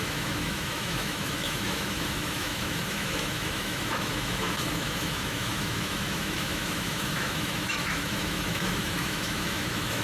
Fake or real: fake